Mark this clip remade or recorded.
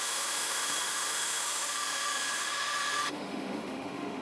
remade